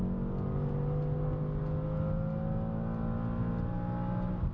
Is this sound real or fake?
real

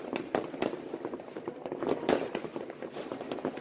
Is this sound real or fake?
fake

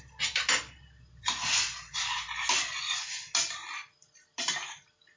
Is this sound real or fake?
real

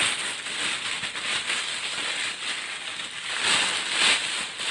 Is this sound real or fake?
real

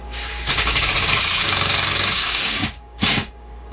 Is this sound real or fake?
fake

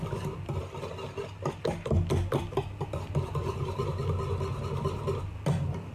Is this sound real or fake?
real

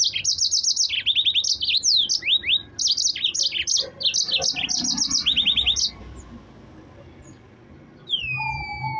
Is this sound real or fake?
real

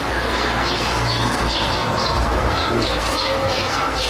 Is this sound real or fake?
fake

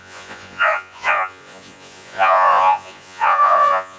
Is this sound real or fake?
fake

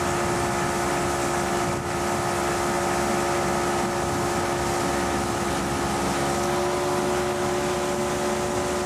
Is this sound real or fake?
real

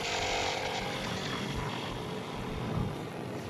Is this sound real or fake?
real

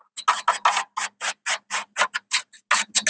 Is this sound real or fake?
real